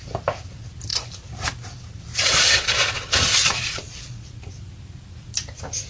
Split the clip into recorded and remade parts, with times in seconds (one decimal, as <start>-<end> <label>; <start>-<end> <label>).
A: 0.0-2.1 recorded; 2.1-4.5 remade; 4.5-5.9 recorded